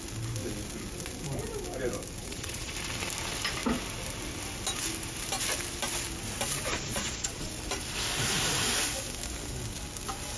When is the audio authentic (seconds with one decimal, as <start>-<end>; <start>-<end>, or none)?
0.0-2.2; 2.7-6.7; 7.5-10.4